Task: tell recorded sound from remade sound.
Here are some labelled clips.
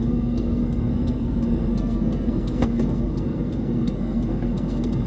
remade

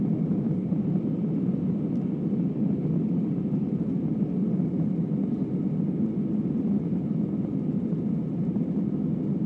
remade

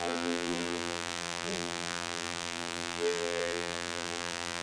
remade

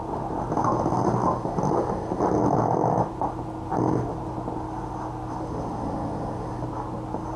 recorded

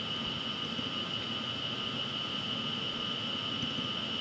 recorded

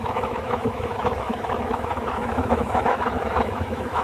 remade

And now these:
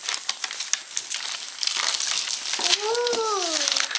recorded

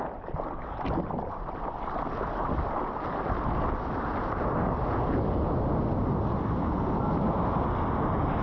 recorded